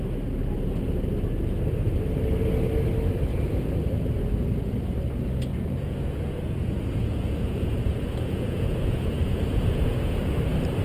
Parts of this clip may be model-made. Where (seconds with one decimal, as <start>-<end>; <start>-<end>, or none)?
3.3-3.9; 5.5-10.3